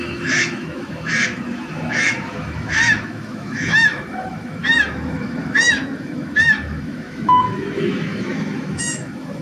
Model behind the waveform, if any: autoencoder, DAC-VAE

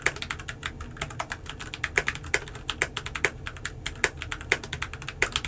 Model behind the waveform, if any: none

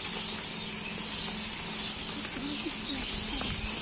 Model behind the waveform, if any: none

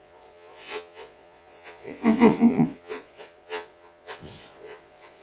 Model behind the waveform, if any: vocoder, Vocos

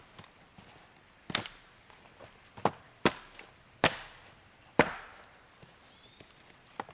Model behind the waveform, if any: none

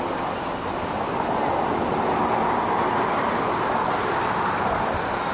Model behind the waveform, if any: none